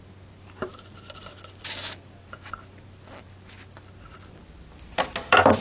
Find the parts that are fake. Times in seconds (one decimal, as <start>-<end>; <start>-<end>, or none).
0.7-4.1